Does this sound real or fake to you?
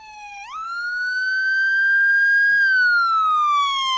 fake